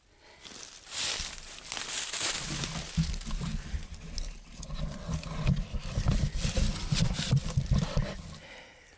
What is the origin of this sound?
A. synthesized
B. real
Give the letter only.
B